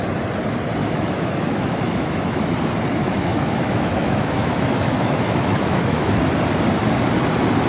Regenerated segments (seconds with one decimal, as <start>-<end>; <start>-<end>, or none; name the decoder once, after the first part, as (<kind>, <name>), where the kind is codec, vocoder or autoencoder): 0.8-2.4 (autoencoder, DAC-VAE); 3.0-6.1